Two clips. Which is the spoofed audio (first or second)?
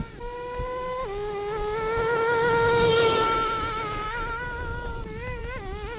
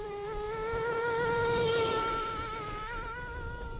second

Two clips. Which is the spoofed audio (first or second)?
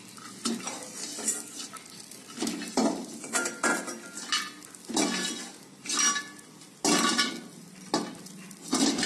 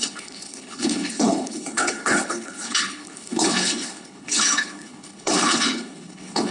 second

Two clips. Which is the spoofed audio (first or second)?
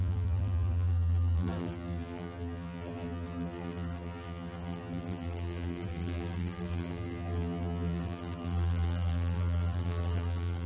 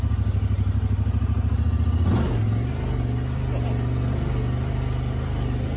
first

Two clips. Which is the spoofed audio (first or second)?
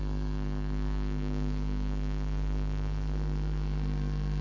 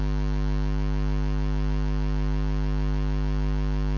first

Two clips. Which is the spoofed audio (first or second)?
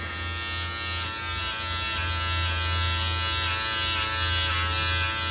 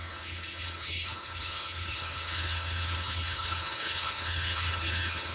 second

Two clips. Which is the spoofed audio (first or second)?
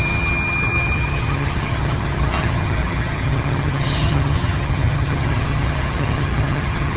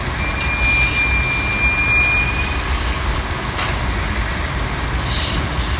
first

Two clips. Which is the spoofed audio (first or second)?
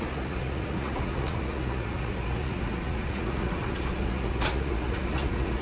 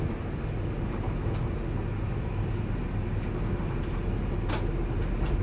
first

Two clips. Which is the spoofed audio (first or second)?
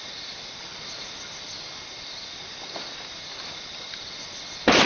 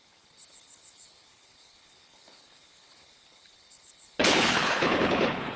second